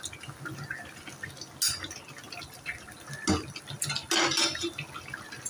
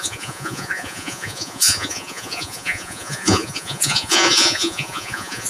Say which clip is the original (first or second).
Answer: first